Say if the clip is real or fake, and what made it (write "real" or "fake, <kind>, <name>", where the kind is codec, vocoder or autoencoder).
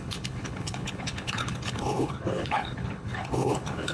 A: fake, codec, HILCodec